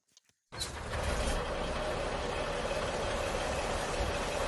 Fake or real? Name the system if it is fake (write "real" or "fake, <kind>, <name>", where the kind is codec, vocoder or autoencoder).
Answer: real